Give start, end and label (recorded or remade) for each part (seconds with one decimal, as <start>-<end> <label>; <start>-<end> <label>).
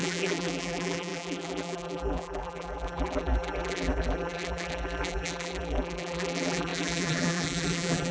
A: 0.0-8.1 remade